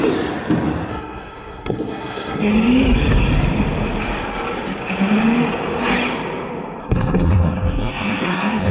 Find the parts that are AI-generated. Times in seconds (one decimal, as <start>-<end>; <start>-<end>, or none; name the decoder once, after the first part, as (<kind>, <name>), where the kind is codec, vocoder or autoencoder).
0.9-2.5 (codec, SNAC); 6.8-8.7